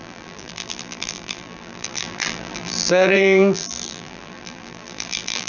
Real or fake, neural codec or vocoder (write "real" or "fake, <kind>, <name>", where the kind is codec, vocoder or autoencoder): fake, vocoder, BigVGAN v2